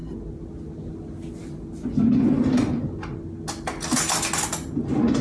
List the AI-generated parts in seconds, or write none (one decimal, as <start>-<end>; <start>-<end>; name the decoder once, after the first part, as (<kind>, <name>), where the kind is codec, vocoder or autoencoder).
none